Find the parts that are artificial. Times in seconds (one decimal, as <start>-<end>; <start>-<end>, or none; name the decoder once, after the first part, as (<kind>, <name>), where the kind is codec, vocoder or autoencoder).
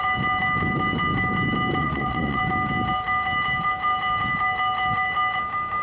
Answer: 1.8-2.4 (vocoder, Vocos)